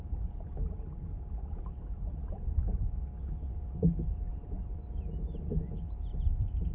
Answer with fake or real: real